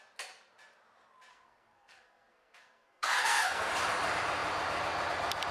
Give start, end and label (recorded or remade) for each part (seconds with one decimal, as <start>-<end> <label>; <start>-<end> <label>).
0.0-1.3 recorded; 1.3-3.7 remade; 3.7-5.5 recorded